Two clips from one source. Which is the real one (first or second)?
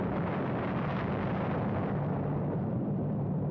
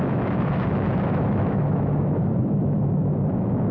first